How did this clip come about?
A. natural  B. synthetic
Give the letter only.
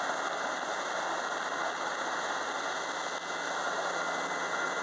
A